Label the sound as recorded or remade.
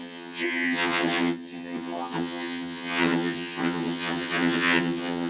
remade